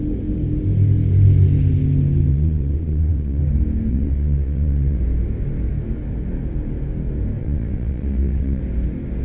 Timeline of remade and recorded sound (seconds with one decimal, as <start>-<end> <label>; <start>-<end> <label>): 0.0-2.3 recorded; 2.3-3.4 remade; 3.4-3.9 recorded; 3.9-5.0 remade; 5.0-7.4 recorded; 7.4-8.6 remade; 8.6-9.2 recorded